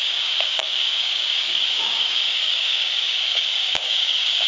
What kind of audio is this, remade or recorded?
remade